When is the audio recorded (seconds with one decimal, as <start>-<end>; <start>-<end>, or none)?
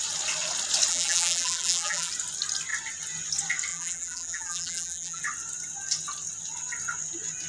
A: 0.0-0.9; 2.1-3.7; 5.2-7.5